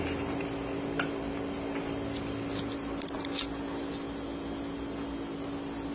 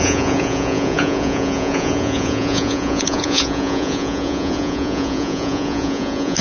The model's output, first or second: second